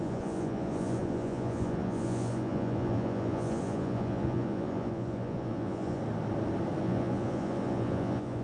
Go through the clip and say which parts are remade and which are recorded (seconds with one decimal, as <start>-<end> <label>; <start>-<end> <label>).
0.0-6.0 remade; 6.0-6.8 recorded; 6.8-8.4 remade